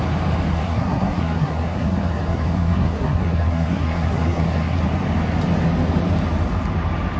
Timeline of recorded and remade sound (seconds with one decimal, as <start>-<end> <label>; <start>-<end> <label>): 0.0-0.5 recorded; 0.5-4.8 remade; 4.8-7.2 recorded